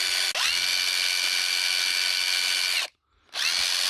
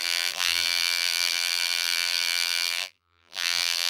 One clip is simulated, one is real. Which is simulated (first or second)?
second